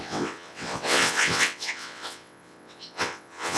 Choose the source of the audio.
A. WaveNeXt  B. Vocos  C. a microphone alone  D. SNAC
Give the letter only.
A